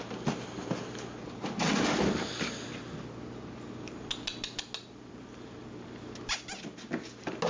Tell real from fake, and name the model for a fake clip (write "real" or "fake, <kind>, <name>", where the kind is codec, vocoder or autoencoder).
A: real